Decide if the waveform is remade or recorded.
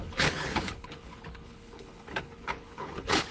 remade